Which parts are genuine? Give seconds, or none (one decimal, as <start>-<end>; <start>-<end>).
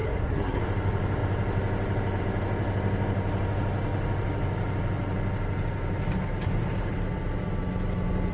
0.6-8.3